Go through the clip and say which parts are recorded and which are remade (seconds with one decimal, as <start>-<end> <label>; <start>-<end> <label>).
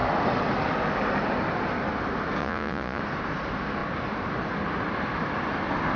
0.0-2.4 recorded; 2.4-3.0 remade; 3.0-6.0 recorded